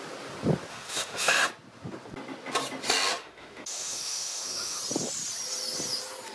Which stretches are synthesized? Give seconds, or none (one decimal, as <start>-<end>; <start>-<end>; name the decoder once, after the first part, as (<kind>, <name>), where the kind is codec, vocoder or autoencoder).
0.7-1.5 (autoencoder, DAC-VAE); 3.1-4.8